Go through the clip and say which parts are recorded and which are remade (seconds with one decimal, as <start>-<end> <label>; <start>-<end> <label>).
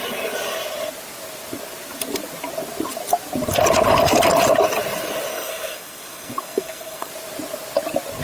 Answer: 0.0-5.3 recorded; 5.3-7.1 remade; 7.1-8.2 recorded